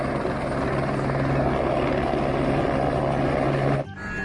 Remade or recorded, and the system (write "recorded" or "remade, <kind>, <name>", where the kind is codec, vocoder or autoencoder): recorded